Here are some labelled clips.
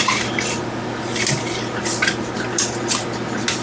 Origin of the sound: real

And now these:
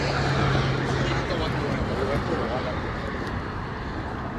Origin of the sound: real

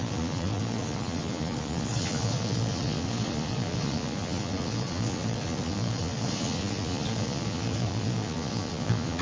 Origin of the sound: fake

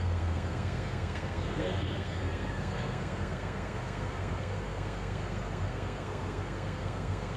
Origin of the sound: fake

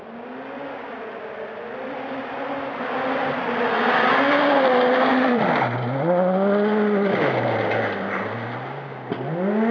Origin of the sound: real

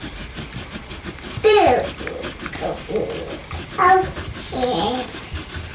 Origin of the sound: fake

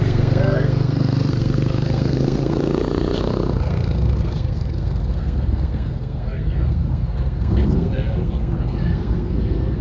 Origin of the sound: fake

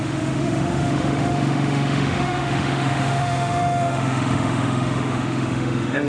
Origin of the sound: fake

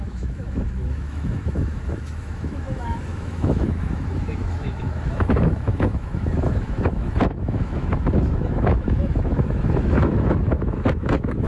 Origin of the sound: fake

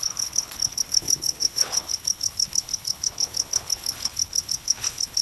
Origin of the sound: fake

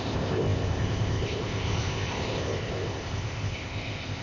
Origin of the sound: fake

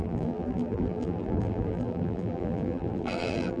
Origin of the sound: fake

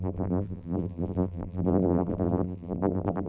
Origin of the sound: fake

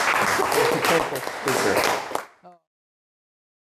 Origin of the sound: real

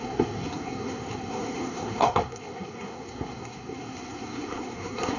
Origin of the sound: fake